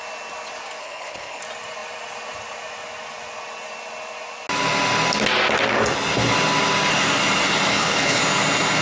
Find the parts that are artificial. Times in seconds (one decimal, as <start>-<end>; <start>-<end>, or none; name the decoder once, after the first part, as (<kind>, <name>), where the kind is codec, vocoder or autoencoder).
0.8-1.4 (codec, HILCodec); 7.7-8.2